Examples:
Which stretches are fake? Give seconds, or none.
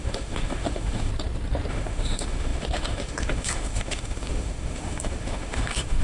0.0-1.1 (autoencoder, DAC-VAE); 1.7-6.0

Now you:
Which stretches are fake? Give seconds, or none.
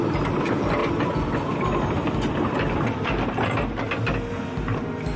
none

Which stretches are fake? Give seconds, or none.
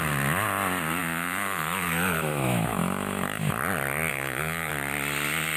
1.0-3.5 (autoencoder, DAC-VAE); 4.1-4.7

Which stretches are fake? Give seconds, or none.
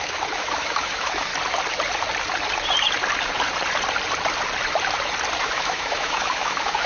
0.0-1.3 (autoencoder, DAC-VAE); 5.4-6.9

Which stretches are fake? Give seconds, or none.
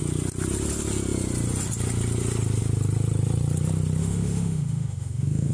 4.0-5.5 (autoencoder, DAC-VAE)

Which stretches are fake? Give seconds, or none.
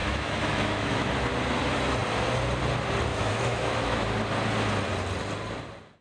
0.0-1.1 (autoencoder, DAC-VAE); 3.1-4.0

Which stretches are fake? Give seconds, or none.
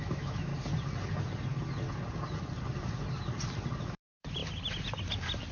0.0-0.5 (autoencoder, DAC-VAE); 3.8-4.4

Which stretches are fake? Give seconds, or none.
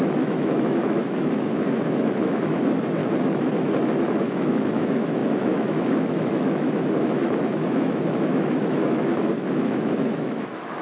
0.0-3.0 (autoencoder, DAC-VAE); 4.2-10.8